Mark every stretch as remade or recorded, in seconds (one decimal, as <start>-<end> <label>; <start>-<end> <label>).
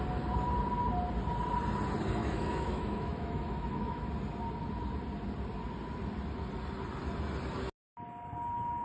0.0-2.2 recorded; 2.2-4.1 remade; 4.1-8.8 recorded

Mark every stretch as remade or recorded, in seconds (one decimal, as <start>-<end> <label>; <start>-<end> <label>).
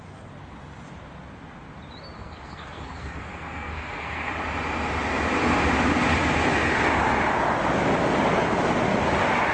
0.0-2.2 recorded; 2.2-4.3 remade; 4.3-9.5 recorded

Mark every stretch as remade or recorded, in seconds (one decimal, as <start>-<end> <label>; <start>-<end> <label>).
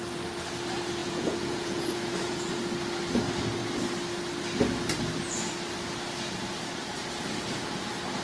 0.0-1.0 recorded; 1.0-2.6 remade; 2.6-8.2 recorded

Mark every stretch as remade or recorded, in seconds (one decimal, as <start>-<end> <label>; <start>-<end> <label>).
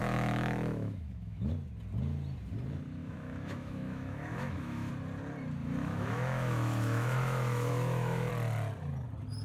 0.0-1.5 remade; 1.5-3.0 recorded; 3.0-4.9 remade; 4.9-5.8 recorded; 5.8-8.3 remade; 8.3-9.4 recorded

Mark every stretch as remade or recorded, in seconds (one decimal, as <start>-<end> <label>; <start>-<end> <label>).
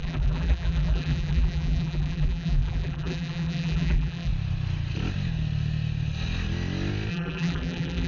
0.0-4.3 remade; 4.3-7.1 recorded; 7.1-8.1 remade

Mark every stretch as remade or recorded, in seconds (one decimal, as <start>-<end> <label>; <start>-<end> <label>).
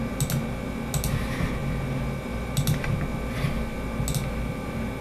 0.0-5.0 recorded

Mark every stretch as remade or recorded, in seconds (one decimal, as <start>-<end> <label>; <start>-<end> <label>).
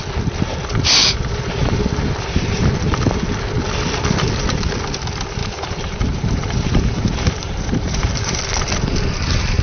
0.0-1.0 recorded; 1.0-2.7 remade; 2.7-5.4 recorded; 5.4-8.4 remade; 8.4-9.6 recorded